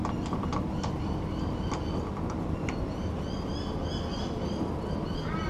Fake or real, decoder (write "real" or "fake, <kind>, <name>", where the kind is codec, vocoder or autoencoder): real